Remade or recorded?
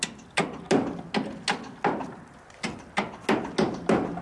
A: recorded